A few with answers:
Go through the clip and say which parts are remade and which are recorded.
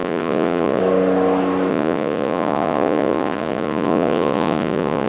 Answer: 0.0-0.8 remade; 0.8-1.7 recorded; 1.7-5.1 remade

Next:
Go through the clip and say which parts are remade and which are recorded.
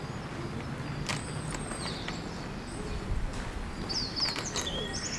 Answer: 0.0-5.2 recorded